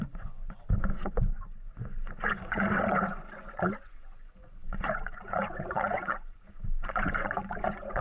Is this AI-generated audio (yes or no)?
yes